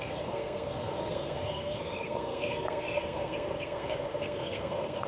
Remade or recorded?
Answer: remade